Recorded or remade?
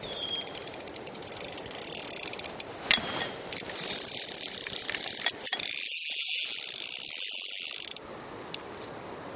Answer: recorded